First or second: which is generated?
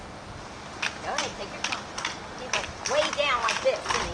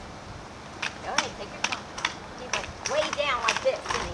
second